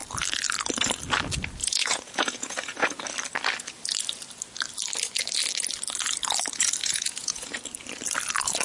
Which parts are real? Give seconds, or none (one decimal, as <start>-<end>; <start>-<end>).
0.0-1.6; 3.0-6.8; 7.6-8.6